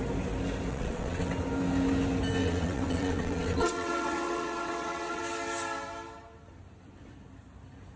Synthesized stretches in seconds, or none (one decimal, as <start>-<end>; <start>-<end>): 0.7-1.3; 2.4-5.2